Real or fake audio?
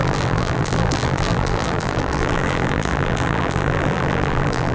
fake